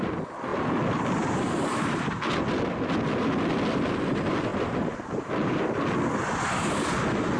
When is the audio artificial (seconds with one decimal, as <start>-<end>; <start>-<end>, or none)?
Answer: none